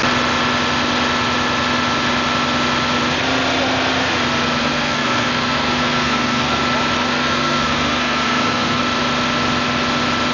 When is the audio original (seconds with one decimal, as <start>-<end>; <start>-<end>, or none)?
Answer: 0.0-4.6; 6.6-7.1; 8.8-10.3